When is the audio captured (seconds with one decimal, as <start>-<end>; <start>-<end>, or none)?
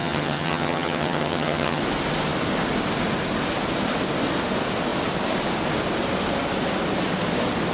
1.8-7.7